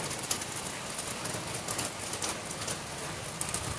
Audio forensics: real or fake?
real